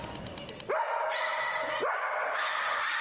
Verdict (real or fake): real